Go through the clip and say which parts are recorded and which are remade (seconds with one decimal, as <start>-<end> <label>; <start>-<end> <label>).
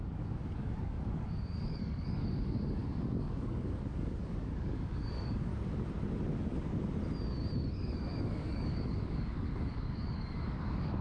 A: 0.0-5.5 remade; 5.5-7.7 recorded; 7.7-11.0 remade